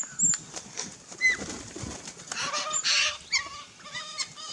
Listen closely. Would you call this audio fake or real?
real